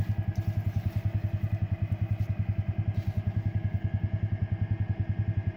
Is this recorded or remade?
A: recorded